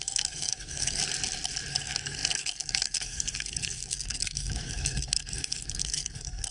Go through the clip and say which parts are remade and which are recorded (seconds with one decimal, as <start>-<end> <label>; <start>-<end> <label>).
0.0-1.0 remade; 1.0-1.7 recorded; 1.7-6.5 remade